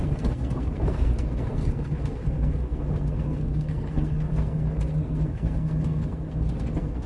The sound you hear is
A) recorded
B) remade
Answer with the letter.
B